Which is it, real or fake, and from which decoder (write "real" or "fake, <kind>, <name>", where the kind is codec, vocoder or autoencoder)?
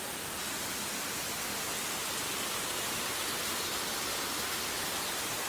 real